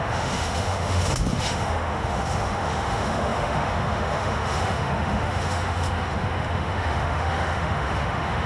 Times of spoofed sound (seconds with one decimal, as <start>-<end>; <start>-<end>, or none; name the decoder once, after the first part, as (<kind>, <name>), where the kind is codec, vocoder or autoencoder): 0.0-8.5 (autoencoder, DAC-VAE)